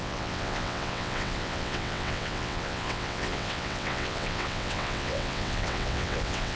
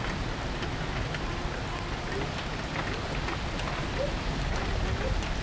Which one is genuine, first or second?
second